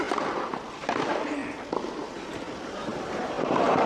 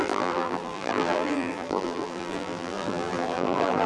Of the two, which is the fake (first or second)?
second